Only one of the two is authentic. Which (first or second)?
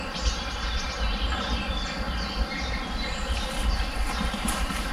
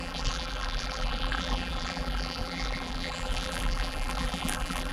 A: first